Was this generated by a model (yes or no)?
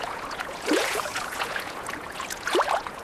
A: yes